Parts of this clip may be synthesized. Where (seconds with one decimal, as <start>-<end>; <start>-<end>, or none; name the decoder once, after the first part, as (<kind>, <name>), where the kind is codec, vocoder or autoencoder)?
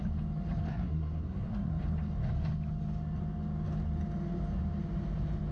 0.7-1.8 (codec, SNAC)